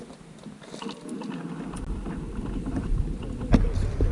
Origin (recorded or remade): recorded